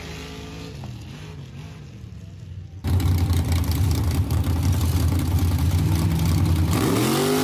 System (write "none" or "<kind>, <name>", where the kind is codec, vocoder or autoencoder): none